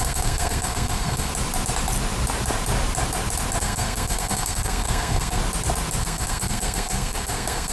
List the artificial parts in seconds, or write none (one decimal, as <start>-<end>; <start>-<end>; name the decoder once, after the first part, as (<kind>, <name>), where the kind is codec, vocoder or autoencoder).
0.0-1.3 (codec, SNAC); 3.6-5.4; 6.0-7.7